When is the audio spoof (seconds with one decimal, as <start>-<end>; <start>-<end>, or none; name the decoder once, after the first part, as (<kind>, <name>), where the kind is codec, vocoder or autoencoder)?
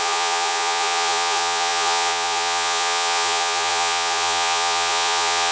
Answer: 0.0-5.5 (vocoder, Vocos)